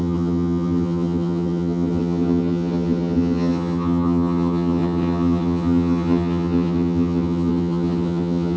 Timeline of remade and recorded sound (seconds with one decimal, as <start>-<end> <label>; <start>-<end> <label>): 0.0-8.6 remade